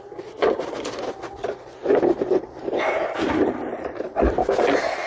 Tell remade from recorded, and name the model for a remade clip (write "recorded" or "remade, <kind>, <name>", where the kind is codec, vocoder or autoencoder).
recorded